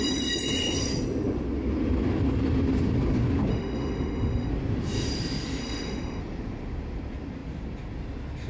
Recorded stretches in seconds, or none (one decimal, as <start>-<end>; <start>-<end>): 0.0-3.5; 4.5-5.6; 6.2-8.5